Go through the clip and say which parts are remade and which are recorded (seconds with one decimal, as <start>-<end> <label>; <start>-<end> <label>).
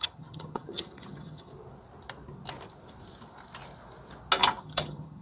0.0-1.5 remade; 1.5-4.6 recorded; 4.6-5.2 remade